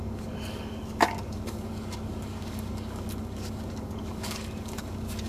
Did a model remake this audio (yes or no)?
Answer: yes